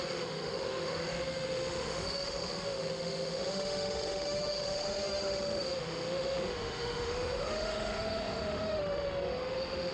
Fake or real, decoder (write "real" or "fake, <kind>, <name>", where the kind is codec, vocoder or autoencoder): fake, autoencoder, DAC-VAE